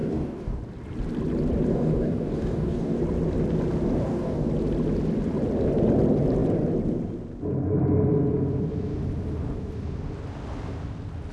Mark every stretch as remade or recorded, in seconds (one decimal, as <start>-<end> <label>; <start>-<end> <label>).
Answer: 0.0-0.6 remade; 0.6-1.7 recorded; 1.7-3.0 remade; 3.0-4.0 recorded; 4.0-4.5 remade; 4.5-11.3 recorded